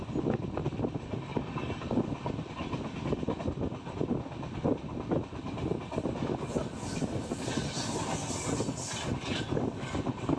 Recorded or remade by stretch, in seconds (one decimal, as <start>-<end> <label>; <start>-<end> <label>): 0.0-10.4 recorded